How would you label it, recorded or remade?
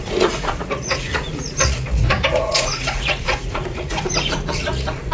remade